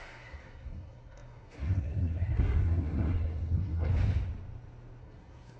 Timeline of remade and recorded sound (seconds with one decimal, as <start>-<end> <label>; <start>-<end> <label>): 0.0-3.9 remade; 3.9-5.0 recorded; 5.0-5.6 remade